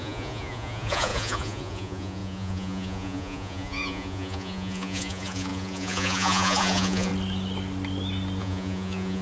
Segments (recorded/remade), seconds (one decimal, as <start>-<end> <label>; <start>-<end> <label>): 0.0-7.1 remade; 7.1-8.4 recorded; 8.4-9.2 remade